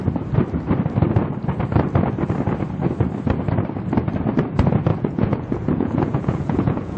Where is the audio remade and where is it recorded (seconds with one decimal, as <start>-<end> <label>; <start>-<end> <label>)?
0.0-4.9 recorded; 4.9-7.0 remade